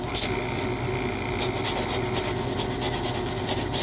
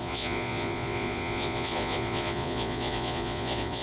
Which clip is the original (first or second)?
first